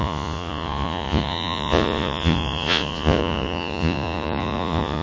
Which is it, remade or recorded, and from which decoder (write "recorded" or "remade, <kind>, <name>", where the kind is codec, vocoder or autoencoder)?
remade, vocoder, Vocos